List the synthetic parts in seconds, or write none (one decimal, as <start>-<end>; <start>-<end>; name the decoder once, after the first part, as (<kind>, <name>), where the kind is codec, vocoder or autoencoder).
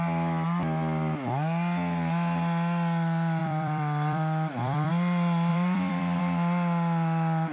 3.4-4.9 (vocoder, BigVGAN v2); 5.5-6.2